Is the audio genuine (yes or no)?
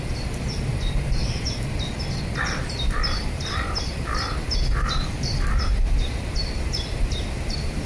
yes